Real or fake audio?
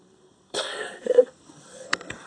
fake